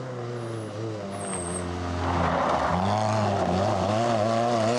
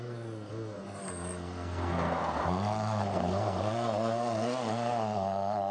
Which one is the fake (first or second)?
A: second